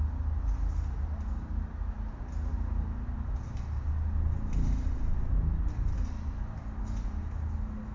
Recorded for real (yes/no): yes